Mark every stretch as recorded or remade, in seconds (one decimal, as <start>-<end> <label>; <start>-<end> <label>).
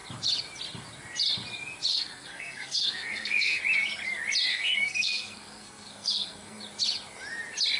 0.0-1.9 recorded; 1.9-3.6 remade; 3.6-4.5 recorded; 4.5-6.6 remade; 6.6-7.8 recorded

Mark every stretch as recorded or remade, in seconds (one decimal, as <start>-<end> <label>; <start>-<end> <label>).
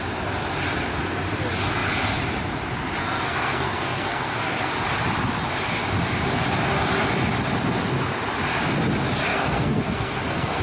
0.0-3.0 recorded; 3.0-4.7 remade; 4.7-9.3 recorded; 9.3-10.6 remade